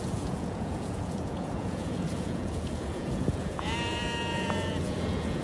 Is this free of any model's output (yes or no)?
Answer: no